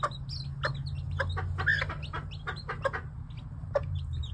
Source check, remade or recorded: recorded